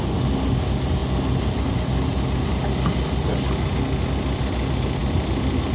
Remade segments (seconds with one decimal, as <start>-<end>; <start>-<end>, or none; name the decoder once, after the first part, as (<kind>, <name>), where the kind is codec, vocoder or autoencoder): none